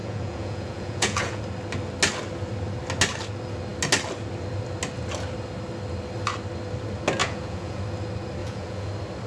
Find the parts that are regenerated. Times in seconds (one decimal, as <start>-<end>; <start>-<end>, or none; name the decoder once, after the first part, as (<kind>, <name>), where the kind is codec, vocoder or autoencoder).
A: 0.0-1.4 (vocoder, Vocos); 7.2-7.8; 8.4-8.9